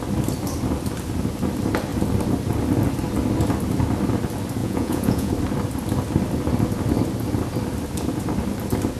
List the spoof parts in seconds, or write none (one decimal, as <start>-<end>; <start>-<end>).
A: 4.6-5.3